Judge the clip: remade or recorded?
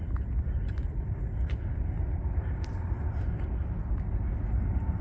recorded